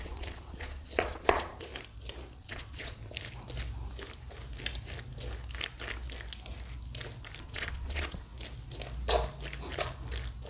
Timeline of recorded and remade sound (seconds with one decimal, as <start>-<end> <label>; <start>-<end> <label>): 0.0-1.7 remade; 1.7-2.4 recorded; 2.4-3.0 remade; 3.0-7.4 recorded; 7.4-8.3 remade; 8.3-10.5 recorded